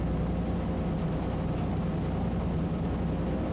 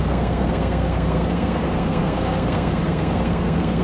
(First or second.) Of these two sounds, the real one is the first